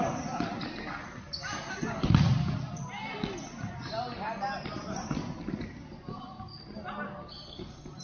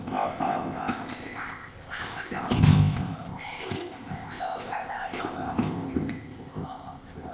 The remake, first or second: second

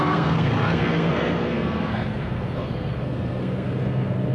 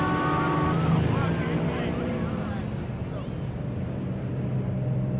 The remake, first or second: first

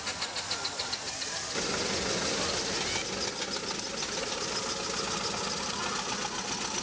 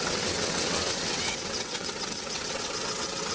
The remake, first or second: second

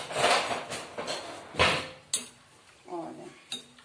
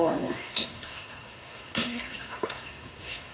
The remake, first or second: second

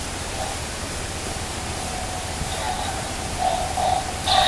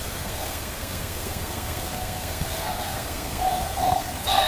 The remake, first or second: second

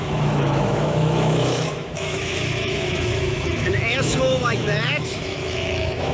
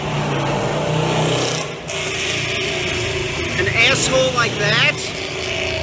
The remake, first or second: first